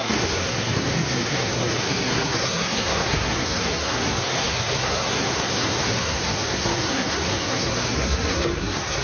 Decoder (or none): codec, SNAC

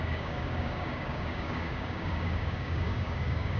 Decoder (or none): codec, DAC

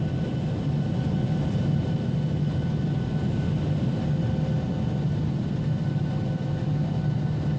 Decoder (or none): none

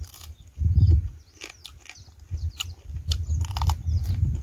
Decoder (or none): none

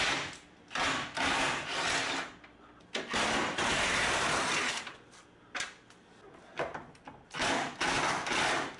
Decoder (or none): none